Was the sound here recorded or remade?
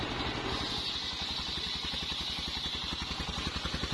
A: recorded